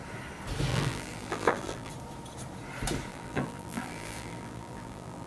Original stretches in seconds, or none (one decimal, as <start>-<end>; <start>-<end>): 0.0-0.7; 1.9-3.1